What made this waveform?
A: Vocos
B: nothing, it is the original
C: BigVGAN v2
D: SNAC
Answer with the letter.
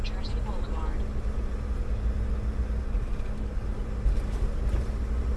B